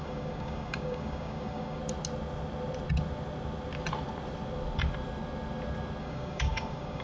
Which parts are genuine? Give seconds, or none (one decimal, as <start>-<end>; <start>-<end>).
1.8-6.0